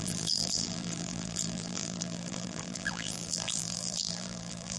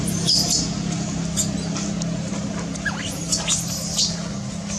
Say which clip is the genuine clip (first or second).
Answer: second